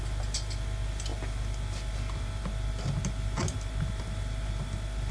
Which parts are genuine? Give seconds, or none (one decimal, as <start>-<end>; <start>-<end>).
0.0-5.1